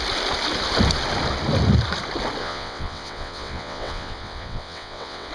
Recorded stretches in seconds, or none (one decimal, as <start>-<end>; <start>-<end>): 0.0-2.4